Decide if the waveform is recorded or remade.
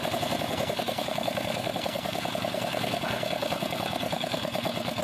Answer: remade